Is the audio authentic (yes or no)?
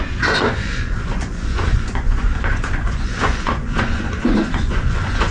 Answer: no